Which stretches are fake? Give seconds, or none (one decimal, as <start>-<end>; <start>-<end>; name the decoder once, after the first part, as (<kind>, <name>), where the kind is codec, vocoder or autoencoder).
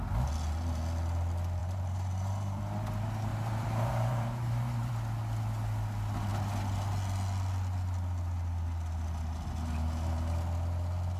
1.6-2.6 (vocoder, BigVGAN v2); 3.3-4.9